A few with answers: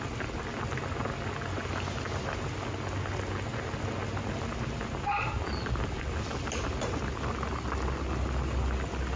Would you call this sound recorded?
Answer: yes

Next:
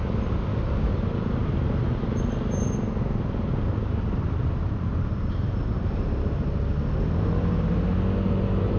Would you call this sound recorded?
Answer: yes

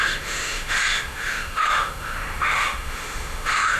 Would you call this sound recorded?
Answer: no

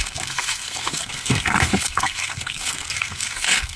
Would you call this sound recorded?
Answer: no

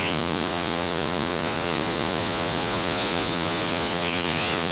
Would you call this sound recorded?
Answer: no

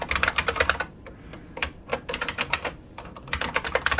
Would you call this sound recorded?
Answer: yes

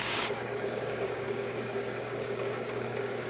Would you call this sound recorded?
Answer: no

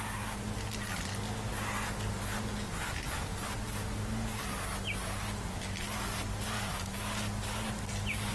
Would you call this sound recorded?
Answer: yes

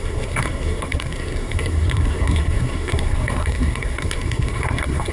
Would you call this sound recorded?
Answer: no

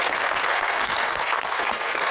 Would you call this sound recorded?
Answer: no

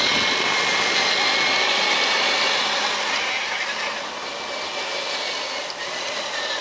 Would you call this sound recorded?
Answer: yes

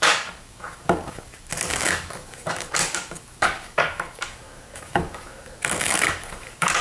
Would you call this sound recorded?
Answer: no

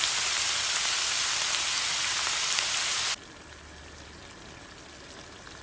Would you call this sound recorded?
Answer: yes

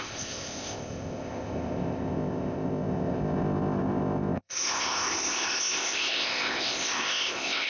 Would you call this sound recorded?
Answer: no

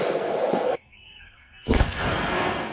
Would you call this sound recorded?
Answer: no